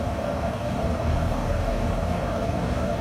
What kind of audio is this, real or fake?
fake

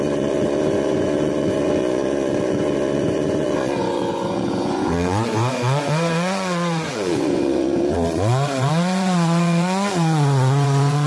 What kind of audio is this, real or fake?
fake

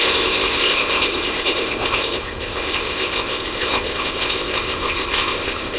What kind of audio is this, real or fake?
fake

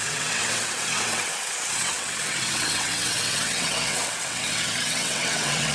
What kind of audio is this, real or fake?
fake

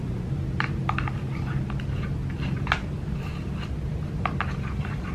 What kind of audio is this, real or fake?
real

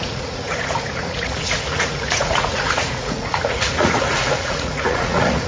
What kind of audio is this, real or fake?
fake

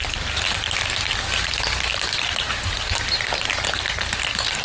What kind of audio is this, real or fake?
real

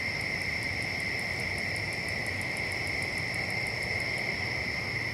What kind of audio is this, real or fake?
real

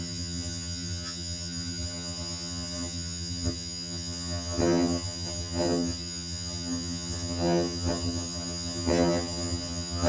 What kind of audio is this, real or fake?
fake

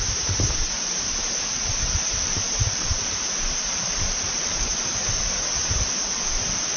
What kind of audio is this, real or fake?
fake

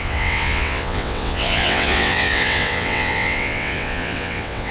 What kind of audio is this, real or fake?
fake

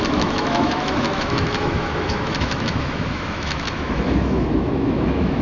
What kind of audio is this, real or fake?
fake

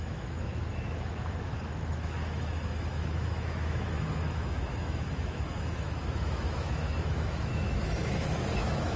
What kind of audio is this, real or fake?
fake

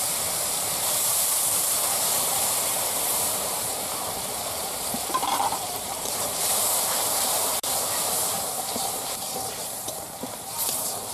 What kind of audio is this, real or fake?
fake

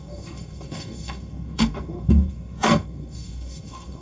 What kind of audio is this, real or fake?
fake